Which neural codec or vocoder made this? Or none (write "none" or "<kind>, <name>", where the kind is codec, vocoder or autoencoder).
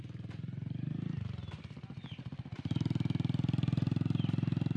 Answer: none